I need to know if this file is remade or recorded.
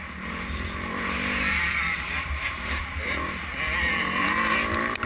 remade